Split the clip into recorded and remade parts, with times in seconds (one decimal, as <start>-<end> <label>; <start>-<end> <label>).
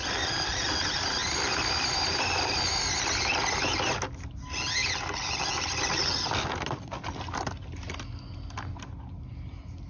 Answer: 0.0-9.9 recorded